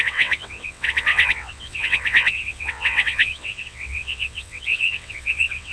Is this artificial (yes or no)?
yes